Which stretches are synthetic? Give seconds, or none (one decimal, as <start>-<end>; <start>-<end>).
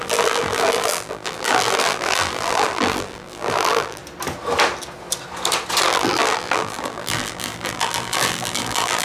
0.0-4.0; 5.8-9.0